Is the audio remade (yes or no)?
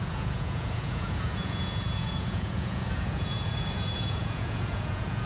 yes